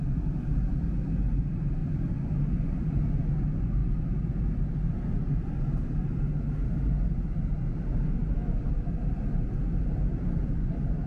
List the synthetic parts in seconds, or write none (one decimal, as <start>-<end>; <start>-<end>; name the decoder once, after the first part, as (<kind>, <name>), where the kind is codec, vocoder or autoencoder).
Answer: none